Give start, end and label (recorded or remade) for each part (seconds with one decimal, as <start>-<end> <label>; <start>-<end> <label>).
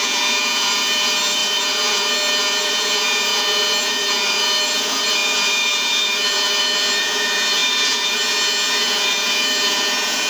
0.0-10.3 remade